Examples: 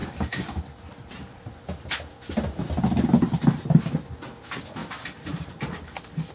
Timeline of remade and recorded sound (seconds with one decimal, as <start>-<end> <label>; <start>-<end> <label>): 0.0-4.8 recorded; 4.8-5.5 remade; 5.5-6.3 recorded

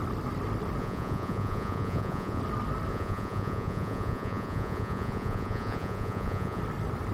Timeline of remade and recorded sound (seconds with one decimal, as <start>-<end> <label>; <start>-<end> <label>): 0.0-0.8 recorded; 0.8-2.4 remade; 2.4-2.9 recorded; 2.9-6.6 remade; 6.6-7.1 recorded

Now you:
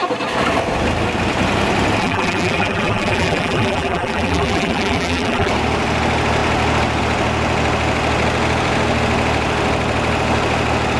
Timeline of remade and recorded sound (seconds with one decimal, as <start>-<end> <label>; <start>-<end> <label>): 0.0-2.0 recorded; 2.0-5.5 remade; 5.5-11.0 recorded

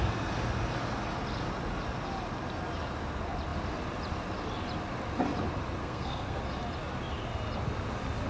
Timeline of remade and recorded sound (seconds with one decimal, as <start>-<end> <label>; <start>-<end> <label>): 0.0-5.8 recorded; 5.8-6.4 remade; 6.4-8.3 recorded

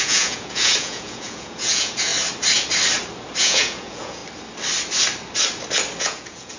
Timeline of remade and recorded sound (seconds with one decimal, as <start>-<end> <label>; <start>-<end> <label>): 0.0-2.1 remade; 2.1-3.4 recorded; 3.4-4.2 remade; 4.2-6.0 recorded; 6.0-6.6 remade

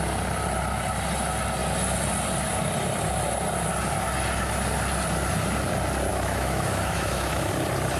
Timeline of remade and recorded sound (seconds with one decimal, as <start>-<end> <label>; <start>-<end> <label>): 0.0-6.1 recorded; 6.1-7.5 remade; 7.5-8.0 recorded